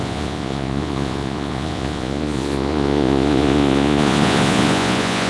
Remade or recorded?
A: remade